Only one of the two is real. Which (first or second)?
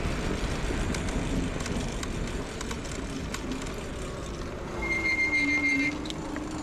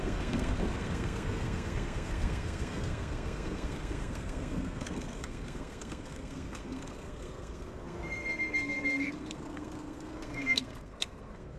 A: first